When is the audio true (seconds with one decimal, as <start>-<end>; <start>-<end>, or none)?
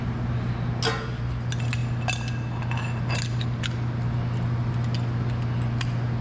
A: 0.0-6.2